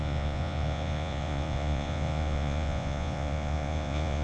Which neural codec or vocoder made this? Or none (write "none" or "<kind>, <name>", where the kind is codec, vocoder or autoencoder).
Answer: vocoder, Vocos